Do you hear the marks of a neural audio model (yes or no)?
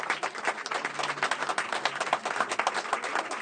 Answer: no